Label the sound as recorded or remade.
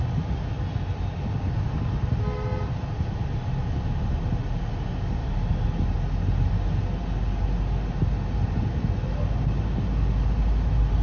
recorded